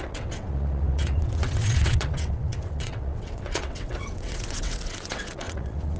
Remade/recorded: remade